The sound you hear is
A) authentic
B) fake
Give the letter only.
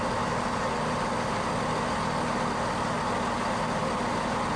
A